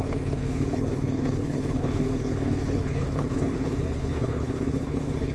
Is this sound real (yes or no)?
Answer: no